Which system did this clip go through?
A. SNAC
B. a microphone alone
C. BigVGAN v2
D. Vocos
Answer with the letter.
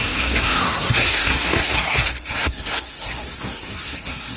A